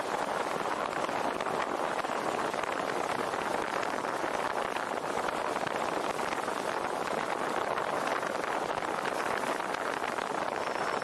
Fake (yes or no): no